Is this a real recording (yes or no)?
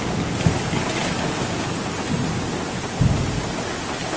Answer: yes